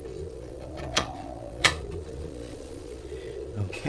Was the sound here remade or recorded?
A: remade